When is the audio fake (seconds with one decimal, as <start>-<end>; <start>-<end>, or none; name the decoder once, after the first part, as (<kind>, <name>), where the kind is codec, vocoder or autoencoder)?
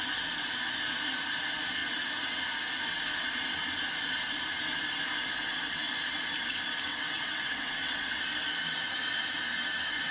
6.9-8.2 (vocoder, WaveNeXt)